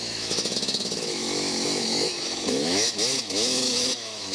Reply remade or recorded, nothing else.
remade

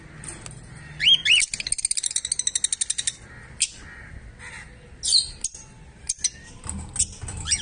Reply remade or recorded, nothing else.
recorded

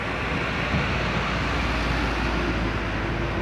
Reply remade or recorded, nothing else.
recorded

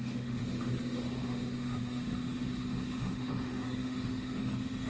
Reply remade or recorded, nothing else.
remade